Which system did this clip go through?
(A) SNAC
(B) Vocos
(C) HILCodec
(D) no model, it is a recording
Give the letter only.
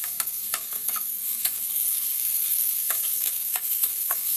A